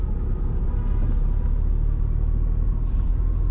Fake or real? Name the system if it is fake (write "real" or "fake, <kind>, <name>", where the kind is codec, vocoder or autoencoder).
real